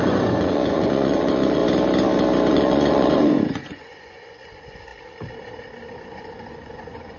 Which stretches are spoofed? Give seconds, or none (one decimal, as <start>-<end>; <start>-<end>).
0.0-1.6; 2.5-4.9; 6.0-7.2